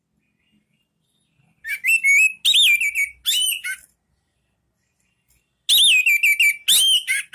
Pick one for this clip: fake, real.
real